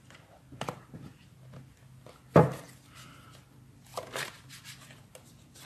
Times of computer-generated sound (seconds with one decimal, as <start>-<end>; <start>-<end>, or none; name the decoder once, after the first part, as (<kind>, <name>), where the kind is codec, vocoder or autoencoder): 3.9-4.5 (vocoder, BigVGAN v2)